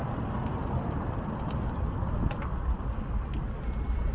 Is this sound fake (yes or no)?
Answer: no